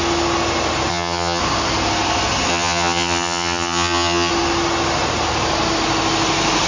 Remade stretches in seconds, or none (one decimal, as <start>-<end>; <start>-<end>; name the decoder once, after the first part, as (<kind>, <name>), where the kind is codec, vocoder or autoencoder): 0.9-1.4 (vocoder, HiFi-GAN); 2.5-4.3